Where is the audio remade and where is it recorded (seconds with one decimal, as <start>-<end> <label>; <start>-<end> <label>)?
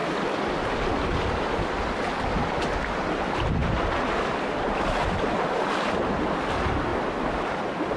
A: 0.0-0.8 remade; 0.8-3.6 recorded; 3.6-4.5 remade; 4.5-8.0 recorded